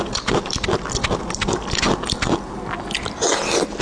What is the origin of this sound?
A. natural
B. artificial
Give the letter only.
A